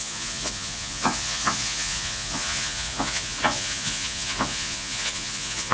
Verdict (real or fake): fake